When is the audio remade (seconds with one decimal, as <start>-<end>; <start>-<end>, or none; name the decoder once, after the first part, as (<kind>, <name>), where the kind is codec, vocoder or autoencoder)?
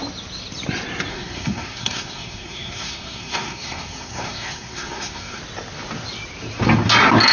1.1-5.4 (codec, SNAC)